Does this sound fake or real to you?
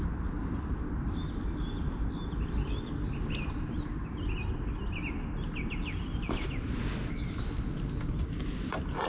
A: real